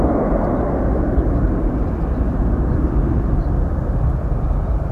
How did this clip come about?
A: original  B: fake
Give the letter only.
A